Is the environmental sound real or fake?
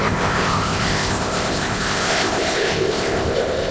fake